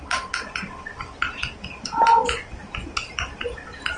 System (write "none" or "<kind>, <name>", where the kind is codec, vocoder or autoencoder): none